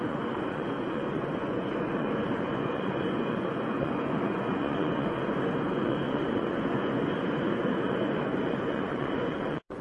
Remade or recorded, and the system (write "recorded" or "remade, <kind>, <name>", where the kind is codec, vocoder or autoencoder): remade, vocoder, Vocos